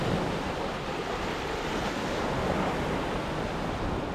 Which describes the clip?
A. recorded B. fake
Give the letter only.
A